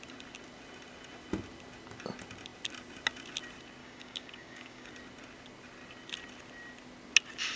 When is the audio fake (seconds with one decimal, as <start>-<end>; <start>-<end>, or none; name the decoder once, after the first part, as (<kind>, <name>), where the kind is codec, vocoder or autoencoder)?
3.8-4.9 (codec, DAC)